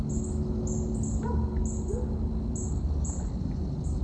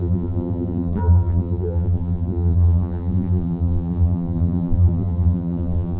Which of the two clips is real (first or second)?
first